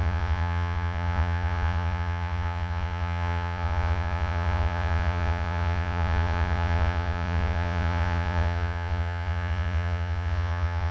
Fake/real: fake